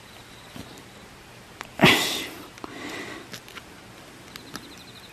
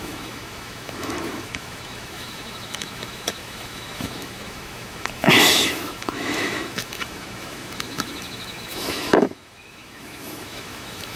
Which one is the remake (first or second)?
second